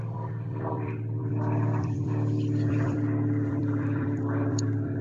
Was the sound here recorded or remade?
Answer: remade